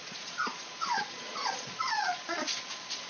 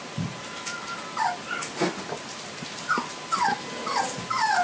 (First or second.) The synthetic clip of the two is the first